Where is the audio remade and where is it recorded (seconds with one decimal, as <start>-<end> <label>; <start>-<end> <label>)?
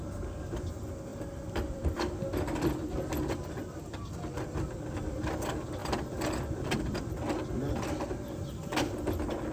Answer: 0.0-1.1 recorded; 1.1-2.1 remade; 2.1-3.6 recorded; 3.6-4.2 remade; 4.2-9.5 recorded